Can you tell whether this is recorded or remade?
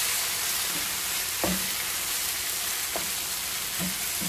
recorded